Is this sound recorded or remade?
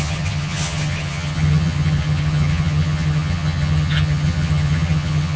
remade